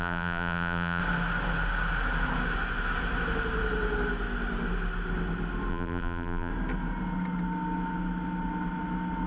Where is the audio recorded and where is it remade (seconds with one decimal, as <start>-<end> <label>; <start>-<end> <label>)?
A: 0.0-1.0 remade; 1.0-5.7 recorded; 5.7-6.5 remade; 6.5-9.3 recorded